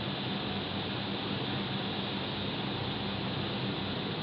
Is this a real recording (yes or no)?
yes